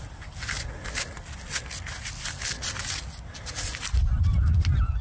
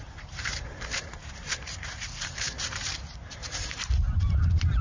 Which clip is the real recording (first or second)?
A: first